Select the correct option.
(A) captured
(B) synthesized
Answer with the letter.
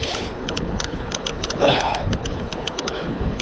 B